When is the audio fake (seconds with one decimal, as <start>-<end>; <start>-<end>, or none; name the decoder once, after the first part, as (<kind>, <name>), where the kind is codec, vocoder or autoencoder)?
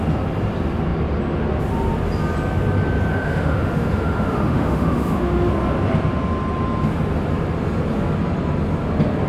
3.1-5.5 (autoencoder, DAC-VAE)